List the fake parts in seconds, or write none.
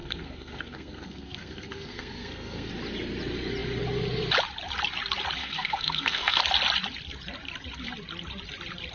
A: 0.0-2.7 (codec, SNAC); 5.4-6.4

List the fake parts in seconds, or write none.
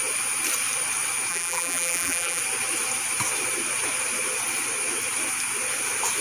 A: 1.3-2.4 (vocoder, BigVGAN v2)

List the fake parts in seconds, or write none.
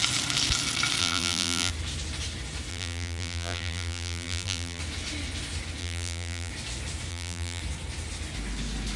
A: 1.0-1.7 (vocoder, BigVGAN v2); 2.7-4.8; 5.8-6.5; 7.1-7.6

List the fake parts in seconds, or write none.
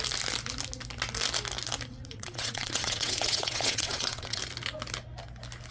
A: 2.0-4.4 (vocoder, WaveNeXt)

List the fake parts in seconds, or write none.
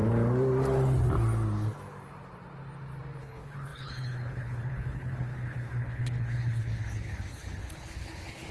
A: 3.2-8.5 (codec, HILCodec)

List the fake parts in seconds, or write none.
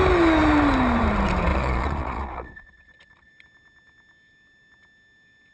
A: 1.5-3.3 (vocoder, Vocos)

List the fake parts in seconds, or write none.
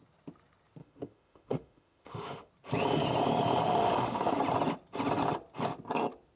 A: 0.8-2.5 (autoencoder, DAC-VAE); 3.8-4.4